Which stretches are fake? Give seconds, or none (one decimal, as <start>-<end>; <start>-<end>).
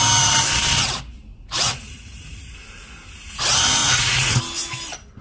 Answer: 1.3-2.6; 3.8-4.4